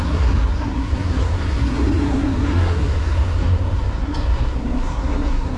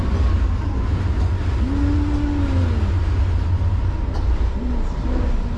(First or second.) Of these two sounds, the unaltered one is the second